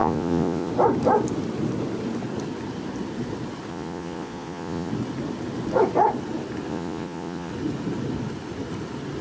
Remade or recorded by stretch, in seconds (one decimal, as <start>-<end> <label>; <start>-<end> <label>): 0.0-0.7 remade; 0.7-3.7 recorded; 3.7-4.9 remade; 4.9-6.7 recorded; 6.7-7.5 remade; 7.5-9.2 recorded